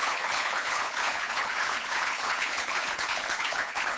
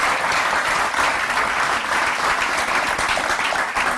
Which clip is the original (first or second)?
second